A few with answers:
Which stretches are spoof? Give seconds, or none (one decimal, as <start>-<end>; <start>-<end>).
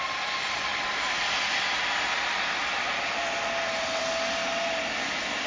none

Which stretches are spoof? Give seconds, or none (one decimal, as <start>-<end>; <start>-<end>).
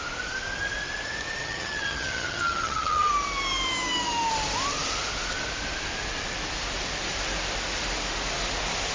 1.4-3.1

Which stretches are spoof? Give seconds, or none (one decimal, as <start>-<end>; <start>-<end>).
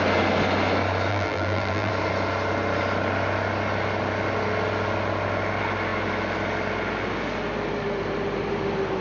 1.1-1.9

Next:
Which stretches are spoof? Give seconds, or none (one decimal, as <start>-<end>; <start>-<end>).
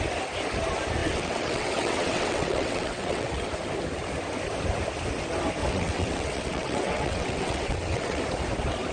1.0-3.5; 5.6-8.2